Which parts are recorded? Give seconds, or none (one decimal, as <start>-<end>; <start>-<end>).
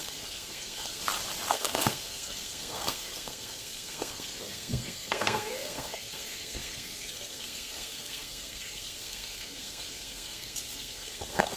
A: 1.0-1.5